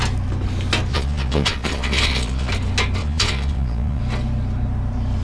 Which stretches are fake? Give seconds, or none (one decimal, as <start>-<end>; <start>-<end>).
0.9-2.5; 3.0-4.0